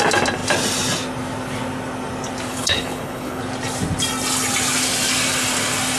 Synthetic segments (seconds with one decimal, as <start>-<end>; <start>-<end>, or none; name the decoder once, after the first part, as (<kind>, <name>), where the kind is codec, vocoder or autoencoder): 2.5-3.4 (codec, HILCodec)